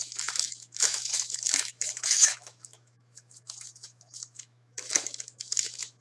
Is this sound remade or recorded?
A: remade